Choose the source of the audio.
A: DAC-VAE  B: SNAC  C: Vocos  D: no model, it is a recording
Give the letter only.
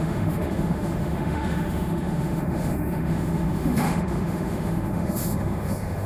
A